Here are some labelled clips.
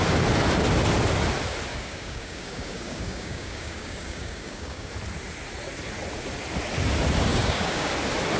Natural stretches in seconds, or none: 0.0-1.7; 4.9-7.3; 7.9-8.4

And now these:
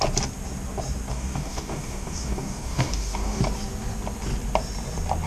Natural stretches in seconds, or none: 0.0-1.1; 3.4-5.3

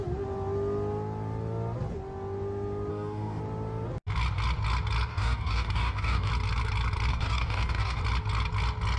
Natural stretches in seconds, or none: 0.0-2.9; 3.4-5.1; 6.3-7.1; 8.0-9.0

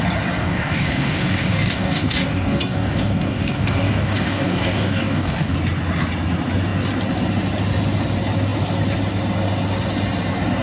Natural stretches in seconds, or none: 0.0-0.4; 5.5-10.6